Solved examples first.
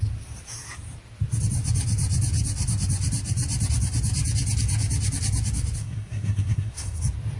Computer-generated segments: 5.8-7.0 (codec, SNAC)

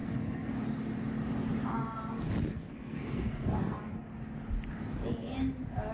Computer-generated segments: 0.0-0.5 (codec, SNAC); 2.5-3.8

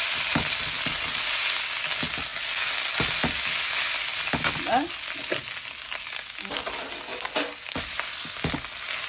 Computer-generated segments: none

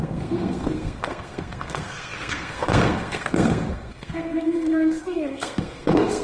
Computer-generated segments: 0.0-6.2 (codec, SNAC)